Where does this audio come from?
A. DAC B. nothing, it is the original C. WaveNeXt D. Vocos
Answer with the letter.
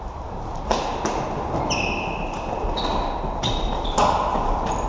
B